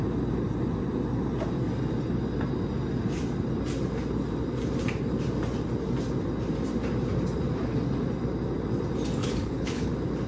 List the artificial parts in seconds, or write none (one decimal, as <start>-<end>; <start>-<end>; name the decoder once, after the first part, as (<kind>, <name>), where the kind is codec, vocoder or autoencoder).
9.2-9.9 (codec, HILCodec)